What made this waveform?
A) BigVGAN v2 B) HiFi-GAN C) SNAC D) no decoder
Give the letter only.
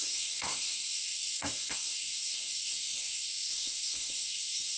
C